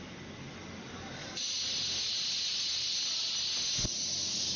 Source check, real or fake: real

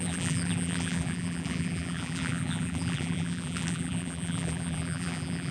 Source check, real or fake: fake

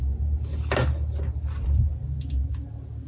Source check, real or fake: real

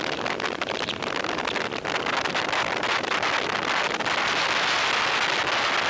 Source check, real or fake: real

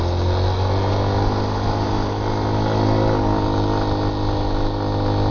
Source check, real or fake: real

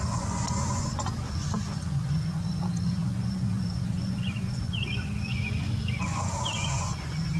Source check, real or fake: fake